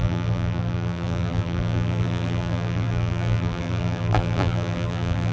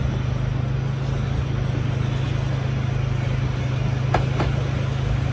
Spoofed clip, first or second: first